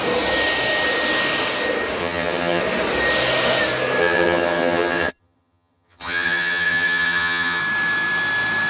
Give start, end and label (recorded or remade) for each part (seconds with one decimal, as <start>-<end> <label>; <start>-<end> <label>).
0.0-2.0 recorded; 2.0-2.6 remade; 2.6-4.0 recorded; 4.0-7.6 remade; 7.6-8.7 recorded